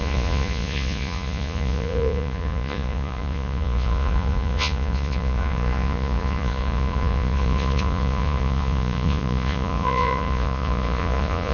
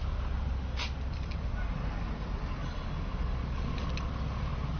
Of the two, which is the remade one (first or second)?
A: first